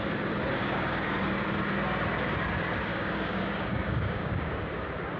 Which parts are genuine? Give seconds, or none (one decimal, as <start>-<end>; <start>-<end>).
0.0-0.6; 1.2-2.9; 4.7-5.2